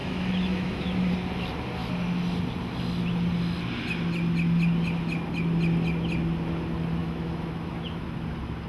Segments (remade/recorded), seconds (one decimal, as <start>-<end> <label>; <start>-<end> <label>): 0.0-1.1 remade; 1.1-7.0 recorded; 7.0-8.0 remade; 8.0-8.7 recorded